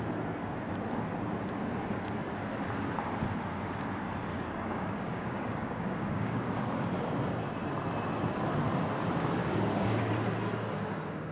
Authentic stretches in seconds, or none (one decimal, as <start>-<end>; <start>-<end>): 0.0-4.3; 6.7-9.4; 10.1-11.3